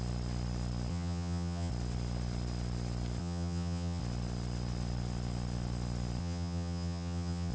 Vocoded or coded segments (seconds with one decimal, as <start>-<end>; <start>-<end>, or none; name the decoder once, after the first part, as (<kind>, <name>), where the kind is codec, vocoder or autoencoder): 0.9-1.7 (vocoder, HiFi-GAN); 3.2-4.0; 6.2-7.5